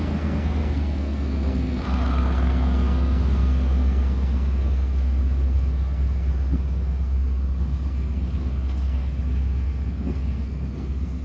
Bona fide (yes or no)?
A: no